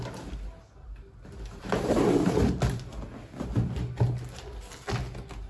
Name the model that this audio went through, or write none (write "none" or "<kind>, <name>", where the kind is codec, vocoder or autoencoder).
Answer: none